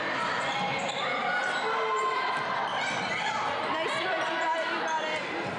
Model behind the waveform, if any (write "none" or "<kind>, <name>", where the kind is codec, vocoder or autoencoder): none